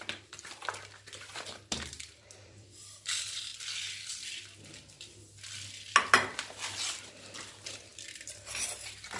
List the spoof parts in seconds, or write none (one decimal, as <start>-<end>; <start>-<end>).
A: 0.0-3.5; 7.5-9.2